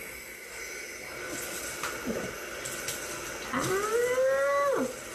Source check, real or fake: real